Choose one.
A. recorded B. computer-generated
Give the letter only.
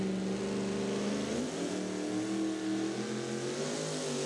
A